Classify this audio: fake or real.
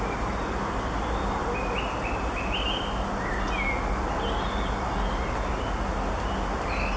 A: real